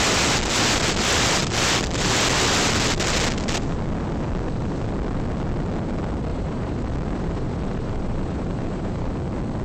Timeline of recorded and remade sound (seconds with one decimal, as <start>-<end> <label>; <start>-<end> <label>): 0.0-6.3 recorded; 6.3-9.1 remade; 9.1-9.6 recorded